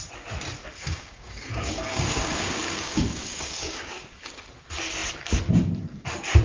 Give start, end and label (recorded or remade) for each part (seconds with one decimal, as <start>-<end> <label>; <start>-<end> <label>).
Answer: 0.0-0.6 recorded; 0.6-4.4 remade; 4.4-6.4 recorded